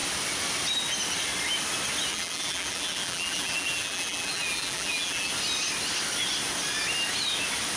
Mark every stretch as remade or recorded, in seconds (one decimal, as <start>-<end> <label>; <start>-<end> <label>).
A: 0.0-2.1 recorded; 2.1-5.3 remade; 5.3-7.8 recorded